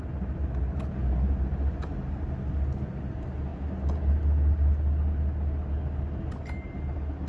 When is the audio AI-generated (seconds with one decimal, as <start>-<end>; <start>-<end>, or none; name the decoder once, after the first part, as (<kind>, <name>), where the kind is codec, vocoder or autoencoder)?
none